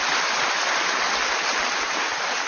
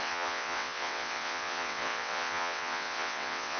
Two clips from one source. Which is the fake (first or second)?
second